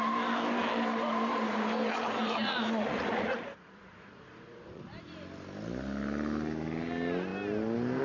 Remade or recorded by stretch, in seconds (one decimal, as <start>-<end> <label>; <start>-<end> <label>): 0.0-2.4 recorded; 2.4-4.8 remade; 4.8-8.0 recorded